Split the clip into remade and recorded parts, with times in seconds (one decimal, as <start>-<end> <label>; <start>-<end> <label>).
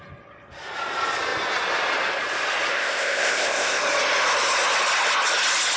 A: 0.0-2.7 recorded; 2.7-3.8 remade; 3.8-5.8 recorded